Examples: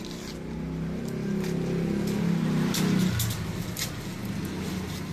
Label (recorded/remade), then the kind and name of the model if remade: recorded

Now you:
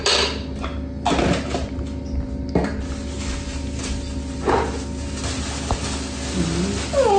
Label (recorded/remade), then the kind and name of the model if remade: recorded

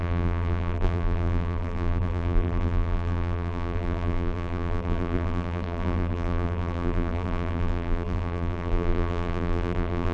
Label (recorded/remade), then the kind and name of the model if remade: remade, vocoder, BigVGAN v2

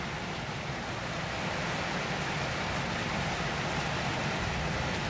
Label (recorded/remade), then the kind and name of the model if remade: remade, vocoder, BigVGAN v2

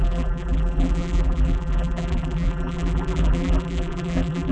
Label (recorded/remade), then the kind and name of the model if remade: remade, vocoder, BigVGAN v2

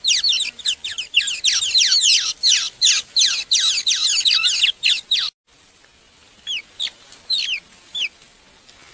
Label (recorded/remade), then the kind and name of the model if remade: recorded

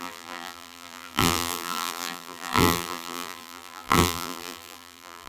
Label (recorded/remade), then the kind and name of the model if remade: remade, vocoder, BigVGAN v2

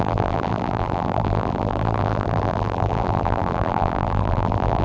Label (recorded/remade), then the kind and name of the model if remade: remade, vocoder, BigVGAN v2